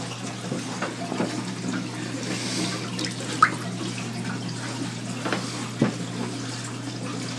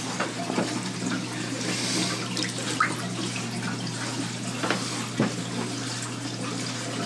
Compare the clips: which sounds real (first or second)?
first